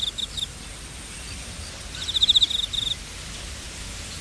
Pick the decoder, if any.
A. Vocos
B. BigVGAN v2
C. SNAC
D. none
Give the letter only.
D